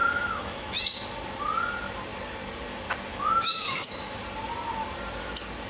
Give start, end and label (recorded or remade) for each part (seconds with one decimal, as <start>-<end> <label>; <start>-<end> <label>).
0.0-0.8 remade; 0.8-3.1 recorded; 3.1-4.2 remade; 4.2-5.7 recorded